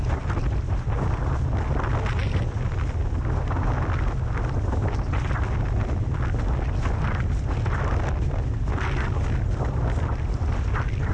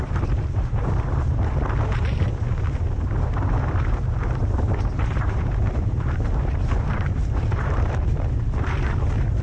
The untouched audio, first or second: first